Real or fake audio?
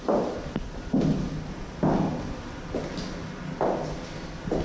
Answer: real